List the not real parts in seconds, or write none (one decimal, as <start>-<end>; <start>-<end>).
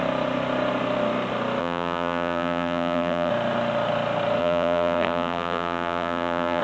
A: 1.6-3.3; 4.4-6.6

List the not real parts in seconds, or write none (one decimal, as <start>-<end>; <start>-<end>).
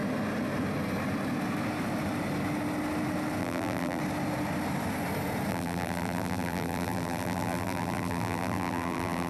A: 3.4-4.0; 5.5-9.3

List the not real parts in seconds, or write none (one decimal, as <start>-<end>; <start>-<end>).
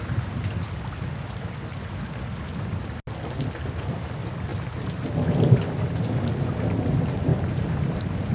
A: 4.5-6.7; 7.3-8.3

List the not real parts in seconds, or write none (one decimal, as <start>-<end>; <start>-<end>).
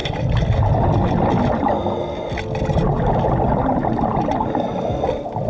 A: none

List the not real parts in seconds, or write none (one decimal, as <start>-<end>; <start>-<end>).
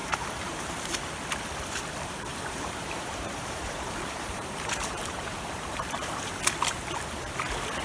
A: 0.0-1.0; 2.3-6.1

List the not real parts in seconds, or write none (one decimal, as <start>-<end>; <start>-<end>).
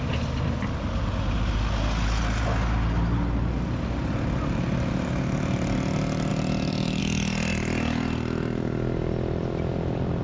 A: 6.3-7.0